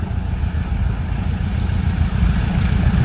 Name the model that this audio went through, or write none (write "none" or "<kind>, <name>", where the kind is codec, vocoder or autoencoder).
none